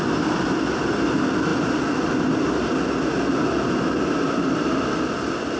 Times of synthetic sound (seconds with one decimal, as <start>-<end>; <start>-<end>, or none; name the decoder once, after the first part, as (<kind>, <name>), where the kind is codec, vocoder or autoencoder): none